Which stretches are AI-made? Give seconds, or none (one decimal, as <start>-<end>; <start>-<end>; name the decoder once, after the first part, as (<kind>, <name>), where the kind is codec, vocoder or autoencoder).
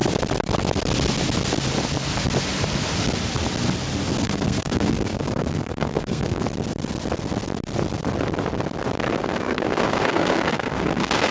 4.2-6.4 (codec, SNAC); 9.2-11.3